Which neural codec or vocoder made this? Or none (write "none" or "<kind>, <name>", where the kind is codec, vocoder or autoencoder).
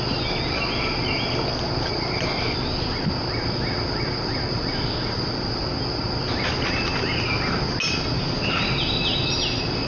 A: none